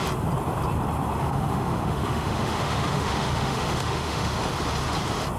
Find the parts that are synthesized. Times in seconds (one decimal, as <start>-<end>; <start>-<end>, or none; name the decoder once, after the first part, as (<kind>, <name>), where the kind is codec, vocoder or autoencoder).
1.2-4.4 (autoencoder, DAC-VAE)